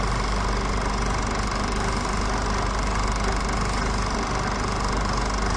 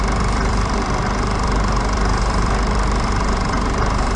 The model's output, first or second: second